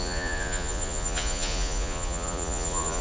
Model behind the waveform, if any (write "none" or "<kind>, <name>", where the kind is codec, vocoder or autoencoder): vocoder, Vocos